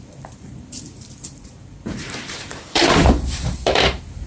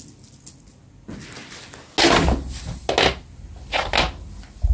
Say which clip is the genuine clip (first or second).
second